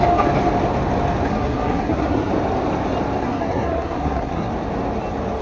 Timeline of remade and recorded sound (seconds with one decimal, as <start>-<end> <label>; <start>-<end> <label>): 0.0-1.3 recorded; 1.3-2.3 remade; 2.3-3.2 recorded; 3.2-4.5 remade; 4.5-5.4 recorded